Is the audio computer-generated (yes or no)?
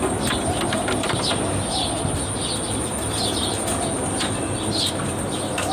no